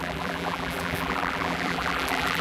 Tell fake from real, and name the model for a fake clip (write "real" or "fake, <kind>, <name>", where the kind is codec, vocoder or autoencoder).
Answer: fake, vocoder, BigVGAN v2